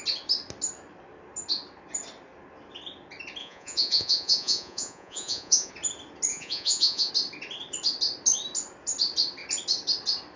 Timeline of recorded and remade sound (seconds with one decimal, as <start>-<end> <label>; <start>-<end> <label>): 0.0-3.4 recorded; 3.4-5.7 remade; 5.7-6.3 recorded; 6.3-7.1 remade; 7.1-10.4 recorded